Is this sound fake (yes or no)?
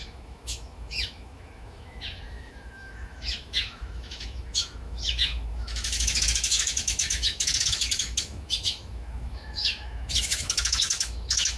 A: yes